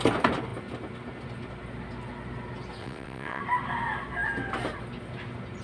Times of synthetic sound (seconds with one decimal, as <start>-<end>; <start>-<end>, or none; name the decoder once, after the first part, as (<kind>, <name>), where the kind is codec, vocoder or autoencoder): 2.8-3.4 (vocoder, WaveNeXt)